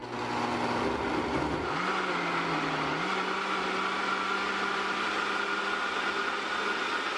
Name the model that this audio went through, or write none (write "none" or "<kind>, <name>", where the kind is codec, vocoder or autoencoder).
none